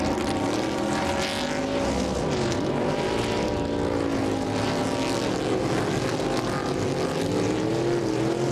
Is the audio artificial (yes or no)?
no